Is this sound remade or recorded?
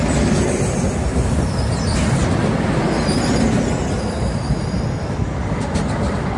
recorded